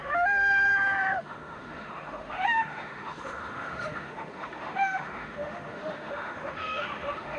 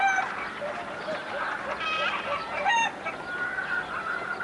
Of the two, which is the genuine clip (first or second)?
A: second